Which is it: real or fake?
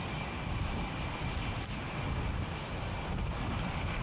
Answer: real